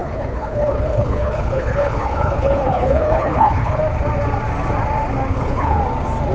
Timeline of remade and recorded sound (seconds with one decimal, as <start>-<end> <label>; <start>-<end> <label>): 0.0-3.8 remade; 3.8-5.3 recorded; 5.3-5.8 remade; 5.8-6.3 recorded